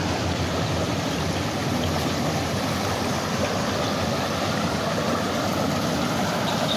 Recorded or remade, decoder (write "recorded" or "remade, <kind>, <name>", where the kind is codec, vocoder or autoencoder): recorded